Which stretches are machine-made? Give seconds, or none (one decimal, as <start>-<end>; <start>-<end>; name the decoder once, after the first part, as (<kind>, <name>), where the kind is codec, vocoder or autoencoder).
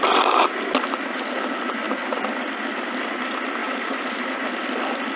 3.6-4.2 (vocoder, BigVGAN v2)